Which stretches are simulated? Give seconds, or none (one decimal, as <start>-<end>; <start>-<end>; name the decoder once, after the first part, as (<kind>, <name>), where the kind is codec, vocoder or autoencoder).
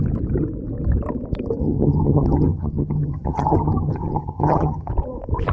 1.6-4.9 (vocoder, HiFi-GAN)